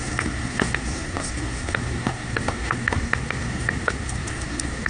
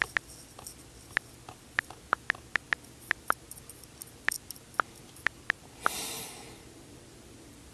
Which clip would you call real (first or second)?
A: second